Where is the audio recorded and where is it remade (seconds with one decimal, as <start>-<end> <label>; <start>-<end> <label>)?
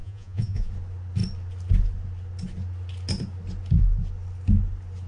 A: 0.0-0.7 remade; 0.7-5.1 recorded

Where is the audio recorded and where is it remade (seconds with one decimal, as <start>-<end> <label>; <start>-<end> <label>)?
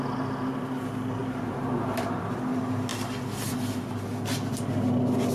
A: 0.0-1.2 recorded; 1.2-2.2 remade; 2.2-5.3 recorded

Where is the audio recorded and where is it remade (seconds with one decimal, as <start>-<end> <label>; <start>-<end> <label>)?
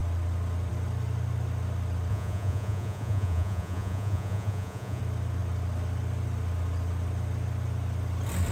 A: 0.0-2.1 recorded; 2.1-5.0 remade; 5.0-8.5 recorded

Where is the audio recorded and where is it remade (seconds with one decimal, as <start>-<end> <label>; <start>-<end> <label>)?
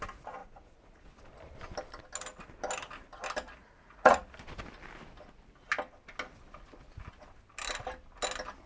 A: 0.0-0.4 recorded; 0.4-1.1 remade; 1.1-3.6 recorded; 3.6-4.2 remade; 4.2-8.7 recorded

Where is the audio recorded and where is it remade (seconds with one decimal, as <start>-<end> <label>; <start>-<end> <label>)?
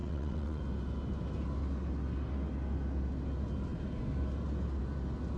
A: 0.0-0.6 remade; 0.6-5.4 recorded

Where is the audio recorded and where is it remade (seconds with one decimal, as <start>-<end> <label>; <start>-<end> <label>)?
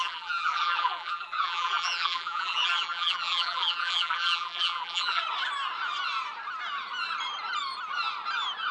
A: 0.0-5.2 remade; 5.2-8.7 recorded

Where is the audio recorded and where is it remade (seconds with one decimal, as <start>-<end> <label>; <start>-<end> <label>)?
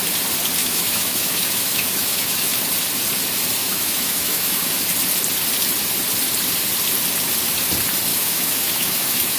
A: 0.0-0.6 recorded; 0.6-2.5 remade; 2.5-3.6 recorded; 3.6-4.7 remade; 4.7-8.1 recorded; 8.1-9.4 remade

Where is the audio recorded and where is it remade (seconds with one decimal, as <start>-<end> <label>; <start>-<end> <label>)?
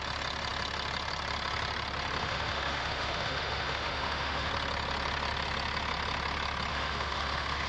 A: 0.0-2.2 recorded; 2.2-4.5 remade; 4.5-6.7 recorded; 6.7-7.7 remade